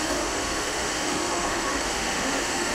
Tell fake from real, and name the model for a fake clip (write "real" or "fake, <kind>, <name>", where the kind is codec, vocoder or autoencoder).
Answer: fake, autoencoder, DAC-VAE